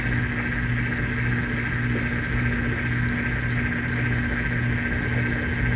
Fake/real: real